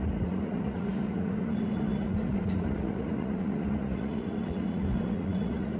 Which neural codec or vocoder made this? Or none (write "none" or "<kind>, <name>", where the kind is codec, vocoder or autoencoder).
vocoder, Vocos